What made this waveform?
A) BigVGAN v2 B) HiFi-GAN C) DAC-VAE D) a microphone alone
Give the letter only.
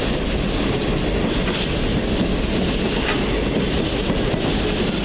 D